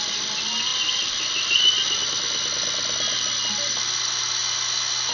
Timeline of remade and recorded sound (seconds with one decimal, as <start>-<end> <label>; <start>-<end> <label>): 0.0-5.1 recorded